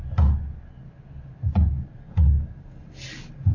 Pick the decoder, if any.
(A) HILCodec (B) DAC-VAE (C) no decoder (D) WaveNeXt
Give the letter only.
C